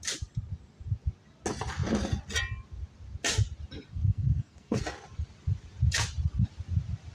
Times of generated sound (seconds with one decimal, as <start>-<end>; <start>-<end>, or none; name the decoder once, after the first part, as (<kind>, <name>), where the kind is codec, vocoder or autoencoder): 3.9-4.8 (codec, SNAC)